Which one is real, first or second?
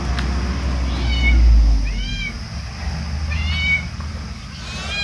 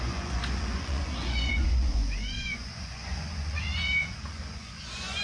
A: first